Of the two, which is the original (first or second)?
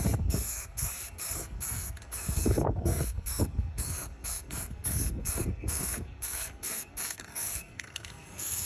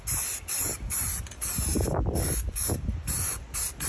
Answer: second